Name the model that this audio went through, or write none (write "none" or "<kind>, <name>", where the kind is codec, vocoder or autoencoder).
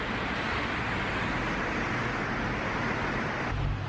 none